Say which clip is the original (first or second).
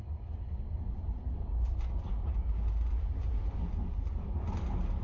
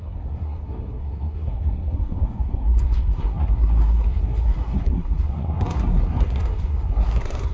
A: first